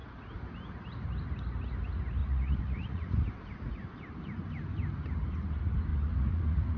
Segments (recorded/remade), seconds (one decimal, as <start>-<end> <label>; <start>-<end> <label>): 0.0-2.2 recorded; 2.2-3.3 remade; 3.3-5.9 recorded; 5.9-6.8 remade